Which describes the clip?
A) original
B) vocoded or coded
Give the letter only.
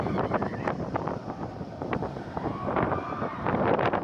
B